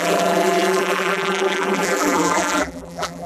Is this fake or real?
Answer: fake